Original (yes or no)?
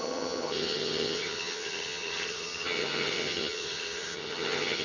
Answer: no